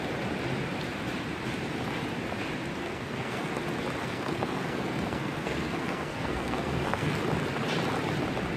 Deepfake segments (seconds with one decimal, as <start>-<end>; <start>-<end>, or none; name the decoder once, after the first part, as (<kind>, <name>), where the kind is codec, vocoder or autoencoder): 2.8-3.5 (codec, SNAC); 4.0-7.2